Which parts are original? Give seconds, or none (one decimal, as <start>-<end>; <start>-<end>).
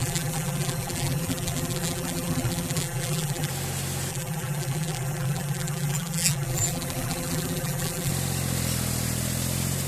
3.5-4.1; 8.1-9.9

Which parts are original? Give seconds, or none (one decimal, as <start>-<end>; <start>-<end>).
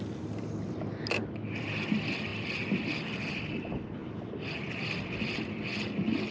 0.0-6.3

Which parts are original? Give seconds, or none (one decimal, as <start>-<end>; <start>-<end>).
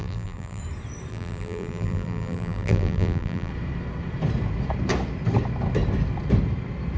0.6-1.1; 3.5-7.0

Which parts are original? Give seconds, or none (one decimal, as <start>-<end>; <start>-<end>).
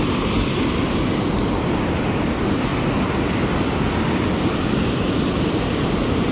0.0-6.3